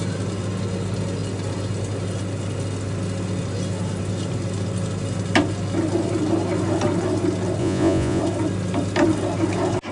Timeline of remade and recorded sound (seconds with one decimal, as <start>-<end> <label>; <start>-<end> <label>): 0.0-7.6 recorded; 7.6-8.2 remade; 8.2-9.9 recorded

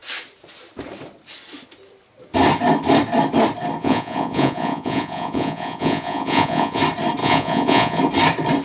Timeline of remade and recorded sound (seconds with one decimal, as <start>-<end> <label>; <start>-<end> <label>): 0.0-3.8 recorded; 3.8-6.8 remade; 6.8-7.2 recorded; 7.2-8.0 remade; 8.0-8.6 recorded

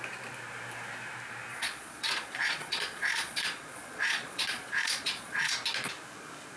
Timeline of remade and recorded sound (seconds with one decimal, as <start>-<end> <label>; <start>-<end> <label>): 0.0-1.5 recorded; 1.5-5.5 remade; 5.5-6.6 recorded

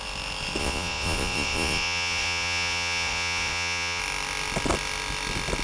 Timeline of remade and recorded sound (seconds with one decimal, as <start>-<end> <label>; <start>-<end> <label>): 0.0-0.6 recorded; 0.6-4.0 remade; 4.0-5.6 recorded

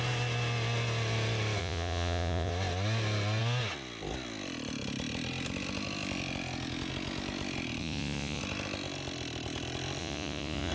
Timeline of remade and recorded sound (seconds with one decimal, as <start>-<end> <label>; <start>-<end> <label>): 0.0-1.6 recorded; 1.6-2.5 remade; 2.5-7.8 recorded; 7.8-8.4 remade; 8.4-10.0 recorded; 10.0-10.7 remade